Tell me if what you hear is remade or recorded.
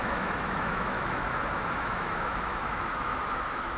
remade